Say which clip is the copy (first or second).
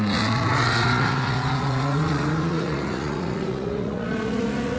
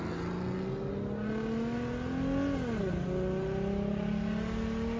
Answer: first